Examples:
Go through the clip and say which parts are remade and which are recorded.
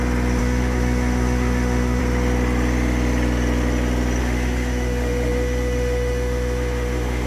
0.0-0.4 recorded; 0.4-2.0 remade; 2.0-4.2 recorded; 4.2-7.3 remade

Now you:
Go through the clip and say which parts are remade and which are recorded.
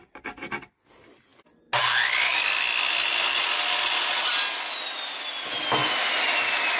0.0-6.8 recorded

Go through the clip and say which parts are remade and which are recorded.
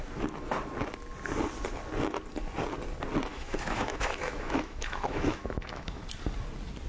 0.0-3.3 recorded; 3.3-6.0 remade; 6.0-6.9 recorded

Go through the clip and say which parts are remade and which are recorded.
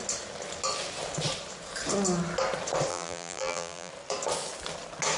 0.0-2.9 recorded; 2.9-3.9 remade; 3.9-5.2 recorded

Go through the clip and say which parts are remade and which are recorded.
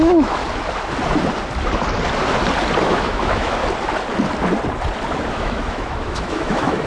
0.0-0.4 remade; 0.4-2.8 recorded; 2.8-3.6 remade; 3.6-5.3 recorded; 5.3-6.9 remade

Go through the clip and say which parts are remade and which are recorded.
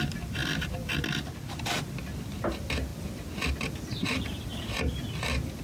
0.0-5.6 recorded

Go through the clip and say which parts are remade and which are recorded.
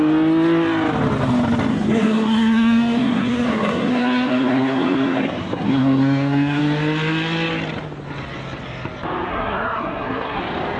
0.0-1.7 recorded; 1.7-6.6 remade; 6.6-9.3 recorded; 9.3-10.4 remade; 10.4-10.8 recorded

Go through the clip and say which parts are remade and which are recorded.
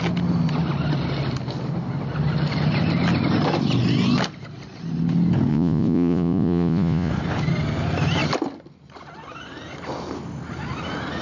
0.0-5.5 recorded; 5.5-7.1 remade; 7.1-11.2 recorded